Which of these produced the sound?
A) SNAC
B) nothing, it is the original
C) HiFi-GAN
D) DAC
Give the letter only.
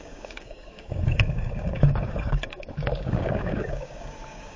D